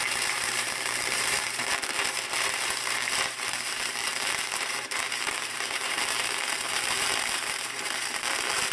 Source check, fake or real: fake